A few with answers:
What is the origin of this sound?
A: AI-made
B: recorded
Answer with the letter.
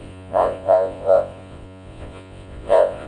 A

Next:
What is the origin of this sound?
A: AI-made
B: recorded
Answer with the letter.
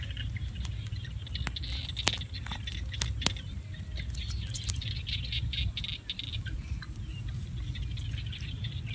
B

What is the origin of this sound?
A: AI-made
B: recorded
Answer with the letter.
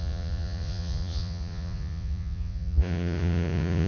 A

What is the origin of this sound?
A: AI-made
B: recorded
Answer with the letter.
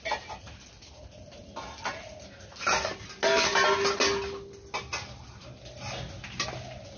B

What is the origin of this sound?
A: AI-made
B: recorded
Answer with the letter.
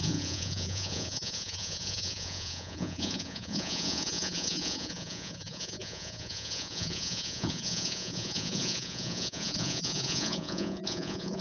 A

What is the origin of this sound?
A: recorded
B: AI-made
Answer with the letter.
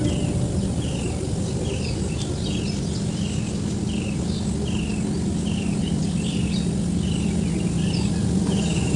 A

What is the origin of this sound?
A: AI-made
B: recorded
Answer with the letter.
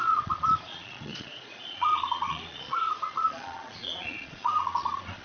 A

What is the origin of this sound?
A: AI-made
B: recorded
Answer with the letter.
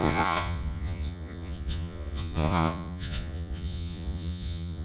A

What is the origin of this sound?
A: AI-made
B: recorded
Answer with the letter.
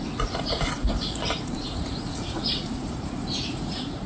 A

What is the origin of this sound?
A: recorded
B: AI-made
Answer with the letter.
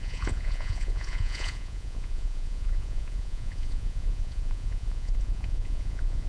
B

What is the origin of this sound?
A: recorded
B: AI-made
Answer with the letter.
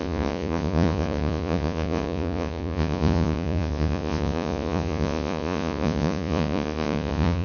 B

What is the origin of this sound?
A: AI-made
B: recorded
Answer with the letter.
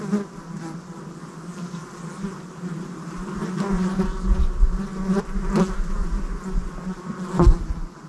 B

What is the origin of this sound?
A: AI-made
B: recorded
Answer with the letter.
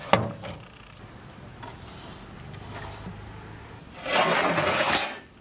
B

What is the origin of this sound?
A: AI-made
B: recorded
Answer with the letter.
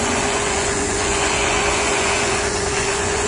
A